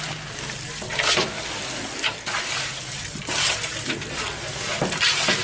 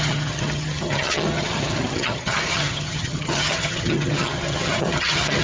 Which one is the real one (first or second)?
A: first